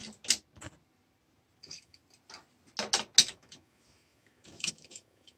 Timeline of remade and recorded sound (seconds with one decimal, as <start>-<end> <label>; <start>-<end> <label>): 0.0-1.6 recorded; 1.6-2.0 remade; 2.0-3.2 recorded; 3.2-5.4 remade